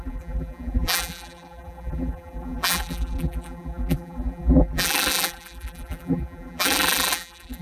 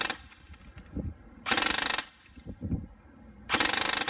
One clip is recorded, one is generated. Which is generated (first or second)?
first